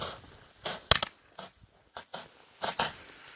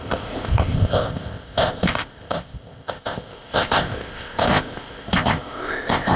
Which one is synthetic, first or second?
second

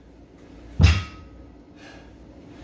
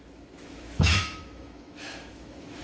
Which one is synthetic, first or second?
second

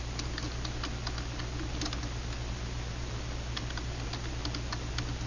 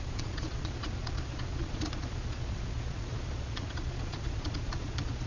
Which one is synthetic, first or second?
second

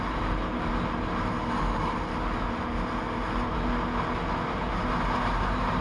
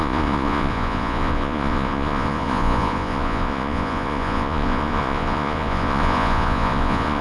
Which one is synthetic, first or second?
second